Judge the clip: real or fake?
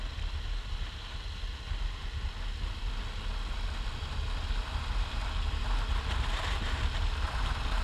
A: real